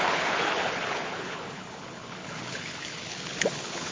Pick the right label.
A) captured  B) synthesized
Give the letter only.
B